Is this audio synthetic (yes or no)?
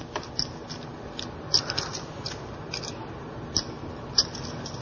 no